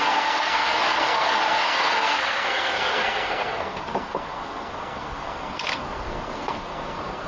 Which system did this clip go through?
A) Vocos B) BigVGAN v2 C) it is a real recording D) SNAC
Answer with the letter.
D